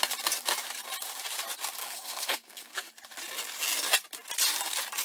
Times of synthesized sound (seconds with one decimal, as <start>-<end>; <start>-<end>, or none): 1.8-2.9